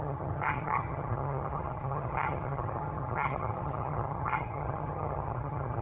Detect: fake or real fake